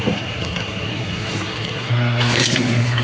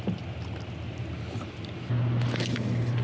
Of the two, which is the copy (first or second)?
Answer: first